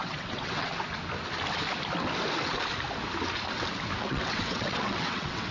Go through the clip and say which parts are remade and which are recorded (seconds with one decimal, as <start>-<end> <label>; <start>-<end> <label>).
0.0-0.7 remade; 0.7-4.0 recorded; 4.0-5.5 remade